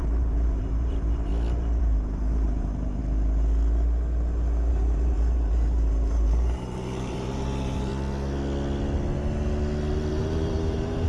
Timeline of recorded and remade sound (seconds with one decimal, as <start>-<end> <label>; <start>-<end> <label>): 0.0-1.3 remade; 1.3-1.8 recorded; 1.8-3.0 remade; 3.0-4.7 recorded; 4.7-7.9 remade; 7.9-10.1 recorded; 10.1-11.1 remade